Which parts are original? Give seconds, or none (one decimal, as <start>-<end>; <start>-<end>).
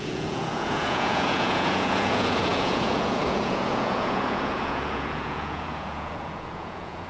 none